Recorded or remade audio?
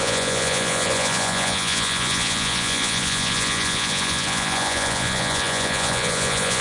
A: remade